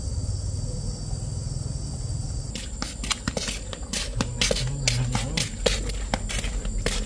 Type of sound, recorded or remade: recorded